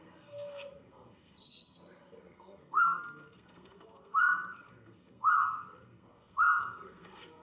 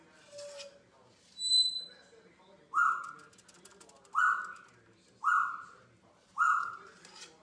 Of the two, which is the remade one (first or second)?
first